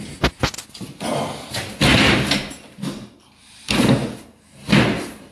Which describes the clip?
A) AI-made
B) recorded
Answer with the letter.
B